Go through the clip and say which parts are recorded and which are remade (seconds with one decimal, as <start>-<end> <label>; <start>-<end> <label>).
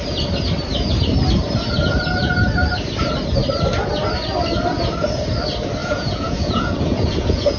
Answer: 0.0-5.8 recorded; 5.8-7.6 remade